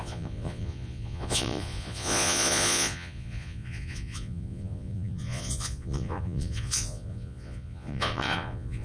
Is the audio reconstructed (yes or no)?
yes